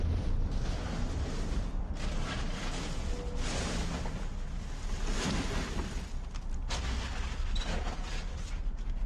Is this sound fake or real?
real